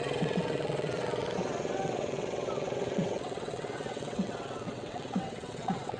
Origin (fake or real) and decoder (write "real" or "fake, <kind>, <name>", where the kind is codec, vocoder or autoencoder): fake, vocoder, WaveNeXt